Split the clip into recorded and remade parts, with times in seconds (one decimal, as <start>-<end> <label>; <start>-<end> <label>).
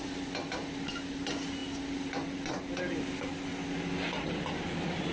0.0-5.1 recorded